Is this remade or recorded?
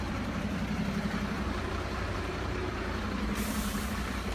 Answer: remade